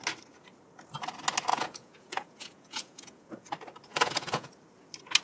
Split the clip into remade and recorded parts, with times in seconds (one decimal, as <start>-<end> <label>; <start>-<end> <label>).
0.0-1.5 recorded; 1.5-3.5 remade; 3.5-3.9 recorded; 3.9-4.5 remade; 4.5-5.2 recorded